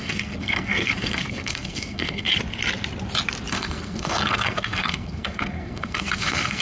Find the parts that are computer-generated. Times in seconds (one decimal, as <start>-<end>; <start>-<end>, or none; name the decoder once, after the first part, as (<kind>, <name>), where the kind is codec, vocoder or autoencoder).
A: 0.0-2.3 (codec, SNAC); 3.5-6.6